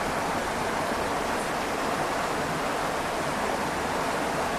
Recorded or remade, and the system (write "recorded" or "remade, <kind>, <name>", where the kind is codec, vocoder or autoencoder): recorded